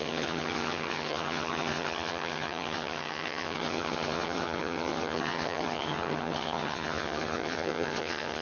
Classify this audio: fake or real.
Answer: fake